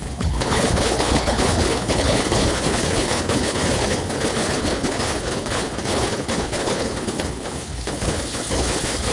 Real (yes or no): no